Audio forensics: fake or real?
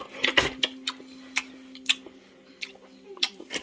real